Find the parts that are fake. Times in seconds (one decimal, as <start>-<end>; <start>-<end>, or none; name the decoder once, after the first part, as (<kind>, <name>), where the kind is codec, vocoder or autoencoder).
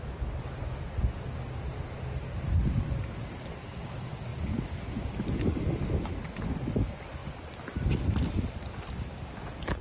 none